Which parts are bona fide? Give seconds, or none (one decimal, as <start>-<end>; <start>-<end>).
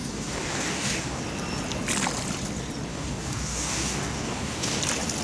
1.2-2.9; 4.8-5.2